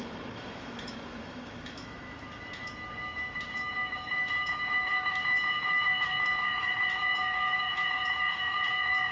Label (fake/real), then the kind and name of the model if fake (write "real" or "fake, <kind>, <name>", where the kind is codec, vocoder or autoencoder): fake, autoencoder, DAC-VAE